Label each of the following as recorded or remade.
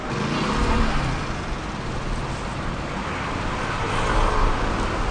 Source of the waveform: recorded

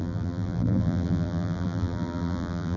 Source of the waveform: remade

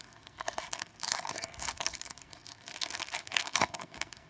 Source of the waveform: remade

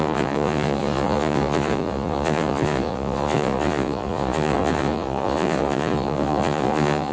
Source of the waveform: remade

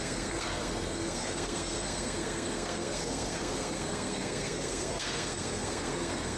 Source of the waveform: remade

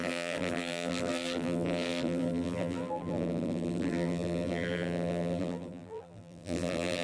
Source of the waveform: remade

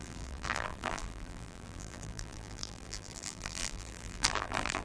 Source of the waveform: remade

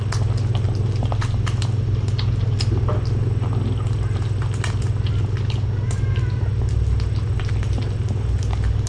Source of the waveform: recorded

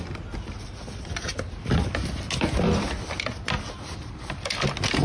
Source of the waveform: recorded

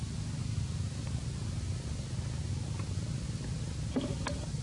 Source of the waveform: recorded